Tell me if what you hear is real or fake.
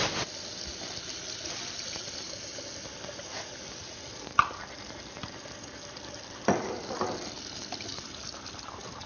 real